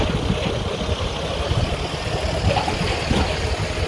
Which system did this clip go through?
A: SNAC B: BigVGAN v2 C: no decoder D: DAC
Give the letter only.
C